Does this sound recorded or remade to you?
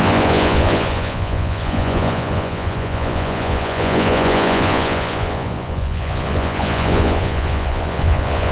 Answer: remade